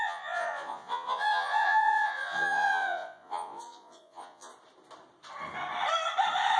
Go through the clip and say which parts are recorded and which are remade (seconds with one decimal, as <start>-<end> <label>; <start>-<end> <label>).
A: 0.0-4.5 remade; 4.5-6.6 recorded